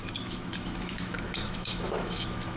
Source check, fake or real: fake